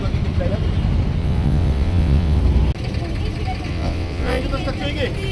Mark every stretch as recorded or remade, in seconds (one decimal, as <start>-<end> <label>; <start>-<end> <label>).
0.0-1.2 recorded; 1.2-2.4 remade; 2.4-3.7 recorded; 3.7-4.4 remade; 4.4-5.3 recorded